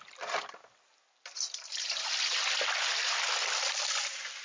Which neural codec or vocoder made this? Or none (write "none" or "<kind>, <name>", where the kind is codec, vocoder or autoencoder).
none